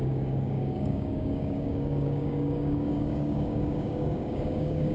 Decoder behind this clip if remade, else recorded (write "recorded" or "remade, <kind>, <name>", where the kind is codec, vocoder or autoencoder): remade, codec, DAC